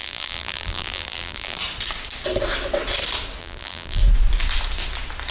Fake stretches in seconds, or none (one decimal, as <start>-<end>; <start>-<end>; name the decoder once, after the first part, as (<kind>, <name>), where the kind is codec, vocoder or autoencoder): 0.0-1.6 (vocoder, BigVGAN v2); 3.4-4.0